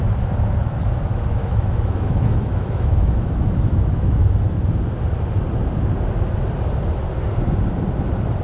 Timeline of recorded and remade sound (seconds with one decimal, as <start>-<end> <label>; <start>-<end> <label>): 0.0-1.4 recorded; 1.4-4.3 remade; 4.3-8.4 recorded